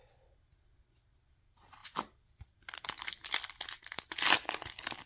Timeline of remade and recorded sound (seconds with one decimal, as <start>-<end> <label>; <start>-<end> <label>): 0.0-5.1 recorded